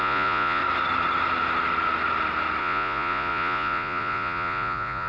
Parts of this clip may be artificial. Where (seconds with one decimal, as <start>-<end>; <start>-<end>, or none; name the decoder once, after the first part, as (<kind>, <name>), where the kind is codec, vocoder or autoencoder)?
0.0-0.6 (vocoder, Vocos); 2.6-5.1